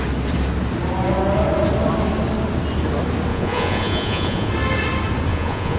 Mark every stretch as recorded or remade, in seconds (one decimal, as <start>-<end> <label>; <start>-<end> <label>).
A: 0.0-3.3 recorded; 3.3-4.5 remade; 4.5-5.3 recorded; 5.3-5.8 remade